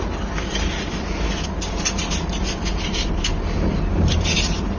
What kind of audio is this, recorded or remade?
recorded